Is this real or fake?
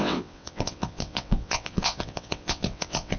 fake